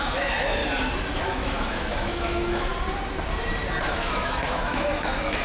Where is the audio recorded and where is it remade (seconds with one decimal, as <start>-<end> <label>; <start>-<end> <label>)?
0.0-0.6 remade; 0.6-1.2 recorded; 1.2-2.7 remade; 2.7-3.8 recorded; 3.8-5.4 remade